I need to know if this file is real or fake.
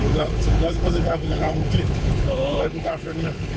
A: fake